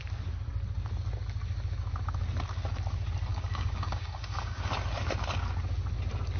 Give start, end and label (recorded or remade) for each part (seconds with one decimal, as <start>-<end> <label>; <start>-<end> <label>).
0.0-3.3 recorded; 3.3-4.7 remade; 4.7-6.4 recorded